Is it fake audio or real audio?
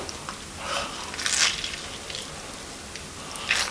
real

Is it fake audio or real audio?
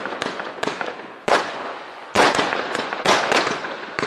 fake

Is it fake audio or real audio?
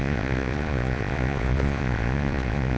fake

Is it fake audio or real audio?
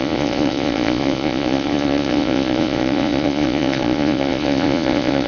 fake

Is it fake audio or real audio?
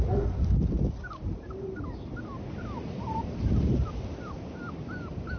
real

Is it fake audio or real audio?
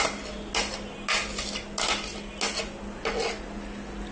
real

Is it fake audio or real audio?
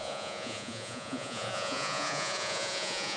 fake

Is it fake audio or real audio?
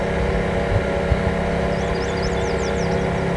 real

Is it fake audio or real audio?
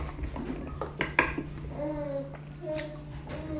real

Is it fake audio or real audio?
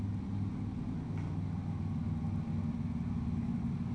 real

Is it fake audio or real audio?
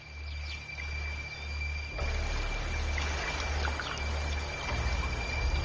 real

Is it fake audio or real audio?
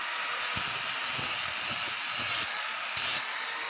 real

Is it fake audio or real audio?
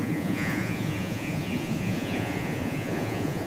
fake